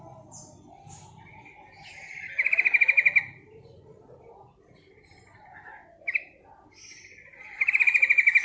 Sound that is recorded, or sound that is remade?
recorded